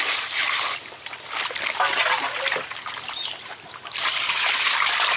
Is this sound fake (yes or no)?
yes